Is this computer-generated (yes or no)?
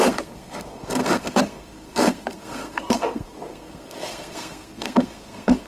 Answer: yes